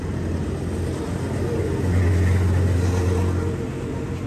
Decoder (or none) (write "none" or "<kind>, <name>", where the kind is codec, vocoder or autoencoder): none